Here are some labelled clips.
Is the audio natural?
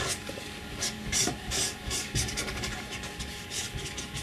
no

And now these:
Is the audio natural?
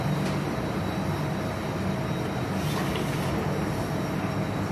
yes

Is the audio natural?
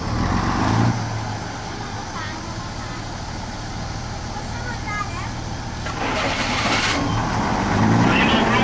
yes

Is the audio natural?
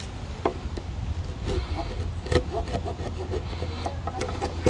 yes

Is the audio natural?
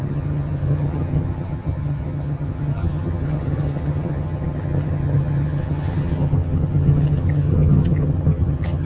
no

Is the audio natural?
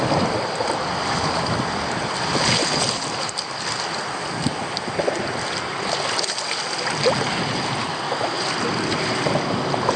yes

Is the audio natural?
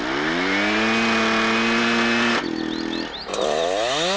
yes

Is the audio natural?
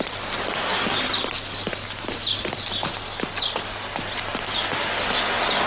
yes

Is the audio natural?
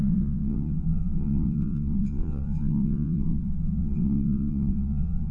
no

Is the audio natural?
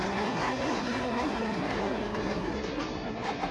no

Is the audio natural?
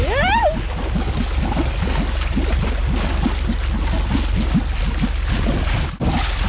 yes